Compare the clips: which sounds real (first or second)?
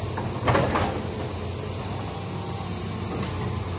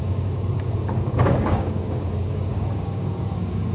first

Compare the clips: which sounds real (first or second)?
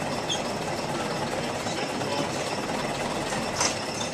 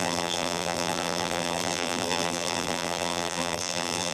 first